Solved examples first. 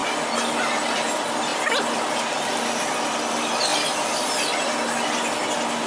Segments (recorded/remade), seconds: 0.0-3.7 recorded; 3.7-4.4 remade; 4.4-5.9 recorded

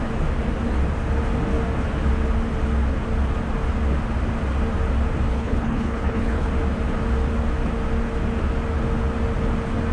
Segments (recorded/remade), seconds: 0.0-5.3 recorded; 5.3-6.5 remade; 6.5-9.9 recorded

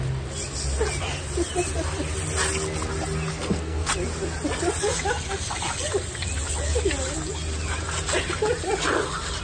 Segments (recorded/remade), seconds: 0.0-3.3 recorded; 3.3-3.9 remade; 3.9-9.4 recorded

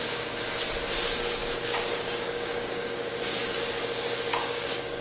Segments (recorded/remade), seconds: 0.0-1.4 recorded; 1.4-3.6 remade; 3.6-4.3 recorded; 4.3-5.0 remade

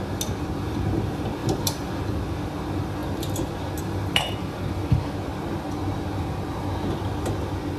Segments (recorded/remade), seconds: 0.0-1.4 recorded; 1.4-1.9 remade; 1.9-7.8 recorded

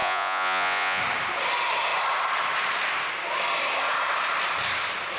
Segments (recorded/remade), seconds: 0.0-1.0 remade; 1.0-5.2 recorded